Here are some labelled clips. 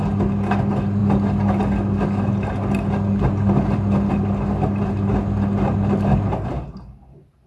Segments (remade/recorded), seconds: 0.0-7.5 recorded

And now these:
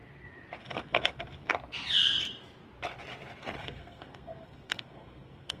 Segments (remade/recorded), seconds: 0.0-0.6 recorded; 0.6-1.5 remade; 1.5-3.6 recorded; 3.6-5.6 remade

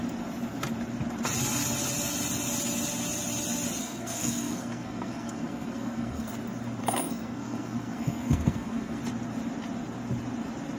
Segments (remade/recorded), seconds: 0.0-3.8 recorded; 3.8-6.3 remade; 6.3-6.8 recorded; 6.8-9.0 remade; 9.0-10.8 recorded

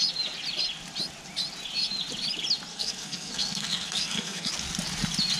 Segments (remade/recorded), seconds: 0.0-2.7 recorded; 2.7-4.5 remade; 4.5-5.4 recorded

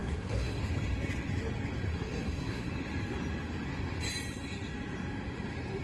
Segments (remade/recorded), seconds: 0.0-0.6 remade; 0.6-1.9 recorded; 1.9-2.7 remade; 2.7-5.8 recorded